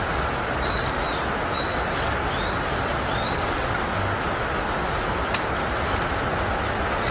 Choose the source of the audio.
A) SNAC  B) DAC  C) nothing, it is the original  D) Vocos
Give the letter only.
C